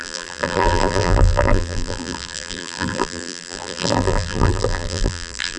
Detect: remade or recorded remade